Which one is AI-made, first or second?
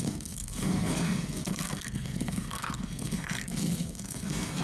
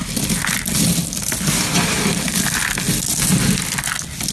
first